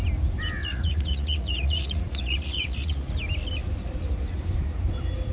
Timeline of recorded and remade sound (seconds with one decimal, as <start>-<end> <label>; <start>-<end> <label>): 0.0-0.6 recorded; 0.6-3.1 remade; 3.1-5.3 recorded